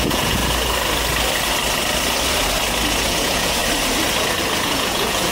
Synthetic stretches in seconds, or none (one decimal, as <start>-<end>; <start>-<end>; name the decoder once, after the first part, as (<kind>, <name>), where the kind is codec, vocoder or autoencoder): 0.0-0.4 (vocoder, Vocos); 2.9-3.6; 4.6-5.3